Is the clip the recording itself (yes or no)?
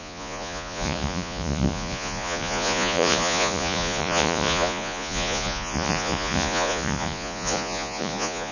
no